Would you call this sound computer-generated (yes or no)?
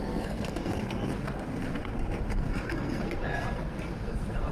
yes